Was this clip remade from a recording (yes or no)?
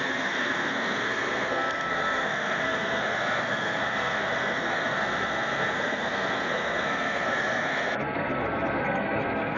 yes